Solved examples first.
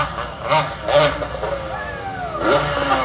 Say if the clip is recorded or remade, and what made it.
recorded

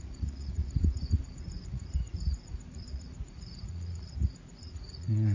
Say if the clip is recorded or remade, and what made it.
remade, vocoder, Vocos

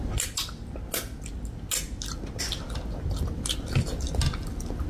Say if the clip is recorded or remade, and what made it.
recorded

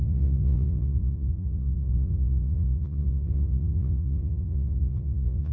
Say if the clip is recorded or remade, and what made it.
remade, vocoder, Vocos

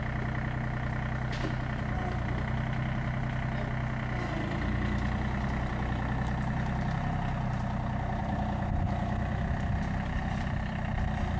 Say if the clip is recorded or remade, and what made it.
recorded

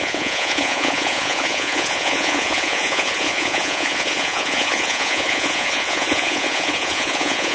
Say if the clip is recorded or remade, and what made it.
remade, vocoder, Vocos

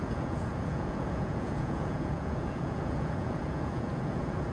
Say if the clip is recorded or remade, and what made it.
remade, vocoder, Vocos